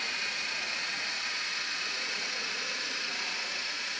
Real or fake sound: fake